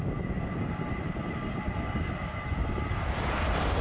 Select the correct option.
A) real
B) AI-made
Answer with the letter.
B